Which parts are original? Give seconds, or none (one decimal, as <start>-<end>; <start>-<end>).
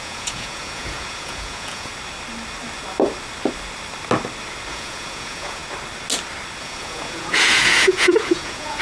1.9-4.7; 5.6-6.6